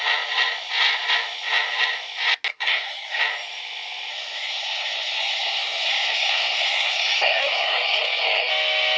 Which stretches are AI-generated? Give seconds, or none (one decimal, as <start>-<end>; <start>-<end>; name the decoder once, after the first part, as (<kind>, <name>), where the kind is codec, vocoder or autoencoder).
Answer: 2.5-3.2 (codec, SNAC); 4.1-8.5